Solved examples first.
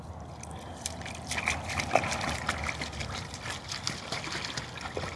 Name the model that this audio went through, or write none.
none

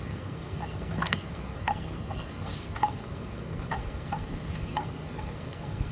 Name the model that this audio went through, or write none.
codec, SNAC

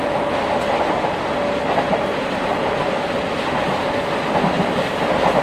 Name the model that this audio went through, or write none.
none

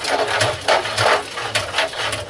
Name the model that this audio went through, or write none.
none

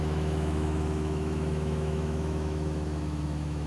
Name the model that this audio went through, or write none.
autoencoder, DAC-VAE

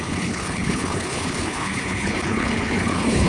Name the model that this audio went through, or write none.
codec, HILCodec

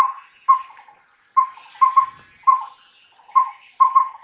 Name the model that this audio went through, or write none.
none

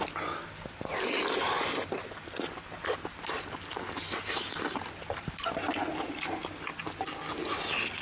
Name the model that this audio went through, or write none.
none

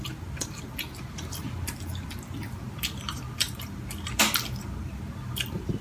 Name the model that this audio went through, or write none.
none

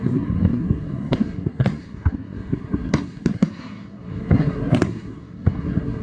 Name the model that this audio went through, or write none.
codec, SNAC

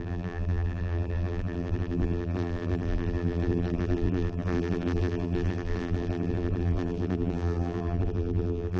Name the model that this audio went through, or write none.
vocoder, BigVGAN v2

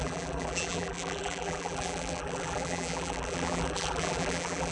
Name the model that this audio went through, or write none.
vocoder, BigVGAN v2